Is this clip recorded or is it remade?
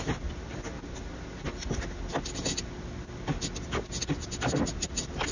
recorded